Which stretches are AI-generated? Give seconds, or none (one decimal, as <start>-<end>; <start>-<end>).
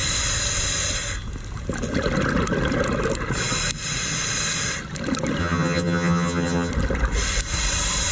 5.4-6.7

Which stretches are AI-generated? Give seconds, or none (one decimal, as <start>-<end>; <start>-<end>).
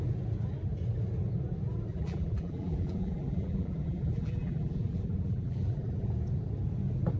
1.9-6.1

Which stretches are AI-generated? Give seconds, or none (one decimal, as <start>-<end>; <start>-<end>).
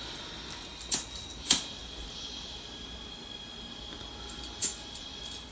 none